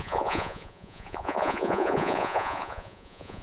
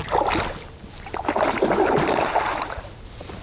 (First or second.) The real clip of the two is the second